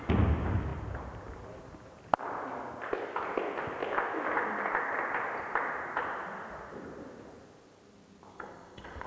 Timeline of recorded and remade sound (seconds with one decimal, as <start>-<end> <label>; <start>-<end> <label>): 0.0-8.3 recorded; 8.3-9.1 remade